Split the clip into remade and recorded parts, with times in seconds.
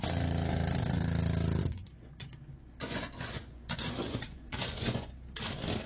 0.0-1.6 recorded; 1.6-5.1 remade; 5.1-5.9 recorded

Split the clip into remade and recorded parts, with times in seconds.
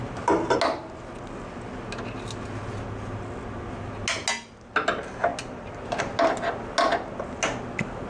0.0-8.1 recorded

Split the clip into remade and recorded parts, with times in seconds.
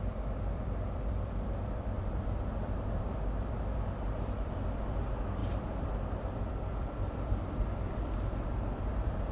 0.0-9.3 remade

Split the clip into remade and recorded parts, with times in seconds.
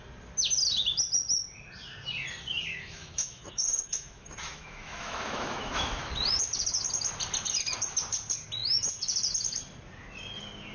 0.0-2.7 recorded; 2.7-6.1 remade; 6.1-10.7 recorded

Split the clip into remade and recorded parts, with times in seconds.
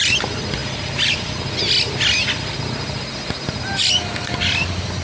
0.0-5.0 recorded